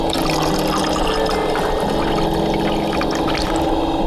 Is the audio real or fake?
real